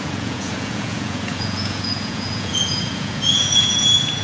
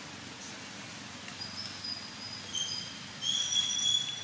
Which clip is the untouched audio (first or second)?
second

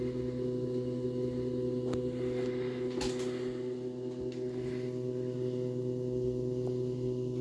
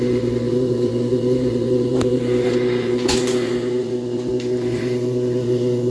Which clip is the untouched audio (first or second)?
first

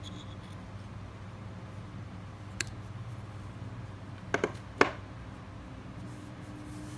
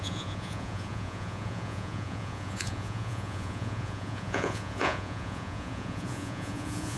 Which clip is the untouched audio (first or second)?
first